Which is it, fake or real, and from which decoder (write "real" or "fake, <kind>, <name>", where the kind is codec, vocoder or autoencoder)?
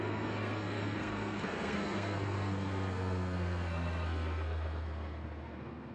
fake, codec, SNAC